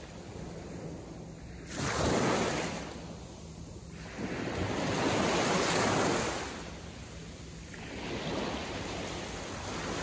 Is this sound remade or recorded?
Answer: recorded